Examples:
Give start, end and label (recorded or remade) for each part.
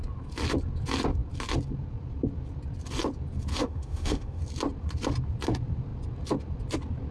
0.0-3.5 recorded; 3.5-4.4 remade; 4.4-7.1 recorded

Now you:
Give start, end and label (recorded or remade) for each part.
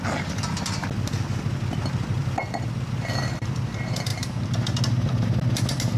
0.0-4.1 recorded; 4.1-4.8 remade; 4.8-6.0 recorded